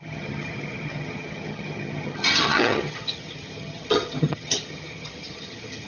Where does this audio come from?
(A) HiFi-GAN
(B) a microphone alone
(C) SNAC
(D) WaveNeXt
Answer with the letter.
A